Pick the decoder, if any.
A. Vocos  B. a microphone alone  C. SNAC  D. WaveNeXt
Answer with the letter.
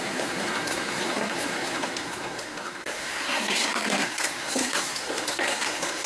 C